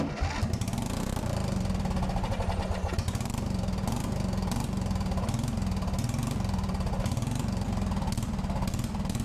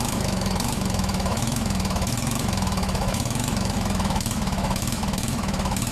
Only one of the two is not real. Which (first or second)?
second